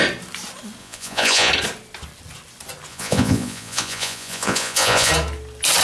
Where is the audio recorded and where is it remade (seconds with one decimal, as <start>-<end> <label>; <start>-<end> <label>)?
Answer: 0.0-0.8 recorded; 0.8-1.5 remade; 1.5-2.9 recorded; 2.9-5.1 remade; 5.1-5.8 recorded